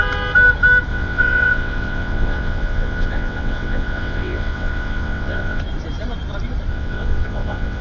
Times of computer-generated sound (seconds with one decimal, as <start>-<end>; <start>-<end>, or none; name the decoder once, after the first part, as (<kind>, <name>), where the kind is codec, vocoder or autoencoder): 0.9-5.6 (vocoder, WaveNeXt); 6.7-7.8